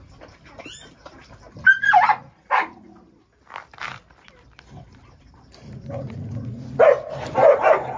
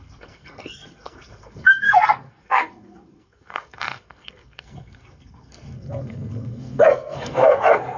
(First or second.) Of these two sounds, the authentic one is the first